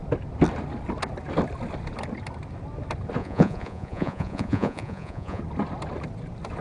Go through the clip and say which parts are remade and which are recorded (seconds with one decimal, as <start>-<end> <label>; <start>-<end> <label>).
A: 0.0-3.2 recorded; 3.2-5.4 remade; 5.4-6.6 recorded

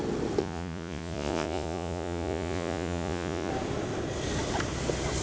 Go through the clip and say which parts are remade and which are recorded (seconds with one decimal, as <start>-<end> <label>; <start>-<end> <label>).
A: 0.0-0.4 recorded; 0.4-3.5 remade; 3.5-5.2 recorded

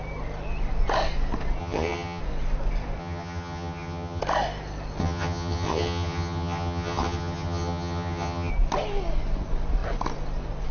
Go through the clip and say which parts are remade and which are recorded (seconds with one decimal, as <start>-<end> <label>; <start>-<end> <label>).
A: 0.0-1.6 recorded; 1.6-2.2 remade; 2.2-3.0 recorded; 3.0-4.2 remade; 4.2-5.0 recorded; 5.0-8.5 remade; 8.5-10.7 recorded

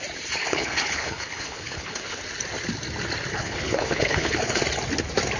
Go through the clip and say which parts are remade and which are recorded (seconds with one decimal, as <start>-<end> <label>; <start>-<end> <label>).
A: 0.0-0.4 recorded; 0.4-2.2 remade; 2.2-3.3 recorded; 3.3-4.6 remade; 4.6-5.4 recorded

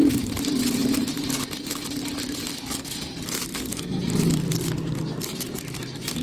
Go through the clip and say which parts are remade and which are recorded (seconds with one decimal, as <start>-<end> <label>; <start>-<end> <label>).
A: 0.0-3.5 recorded; 3.5-4.0 remade; 4.0-6.2 recorded

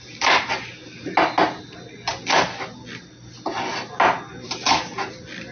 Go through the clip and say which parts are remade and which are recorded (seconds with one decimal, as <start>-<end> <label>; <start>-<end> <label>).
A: 0.0-5.5 recorded

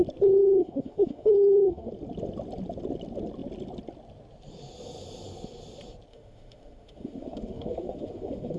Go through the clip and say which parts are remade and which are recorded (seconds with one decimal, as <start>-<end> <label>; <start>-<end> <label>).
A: 0.0-0.4 recorded; 0.4-1.9 remade; 1.9-6.1 recorded; 6.1-8.6 remade